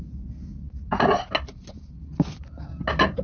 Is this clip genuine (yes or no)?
yes